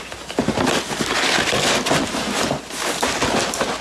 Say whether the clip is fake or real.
real